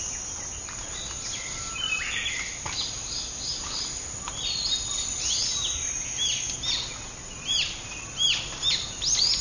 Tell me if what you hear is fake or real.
real